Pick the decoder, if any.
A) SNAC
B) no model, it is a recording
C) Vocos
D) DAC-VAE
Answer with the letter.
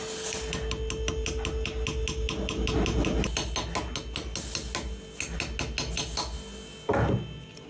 B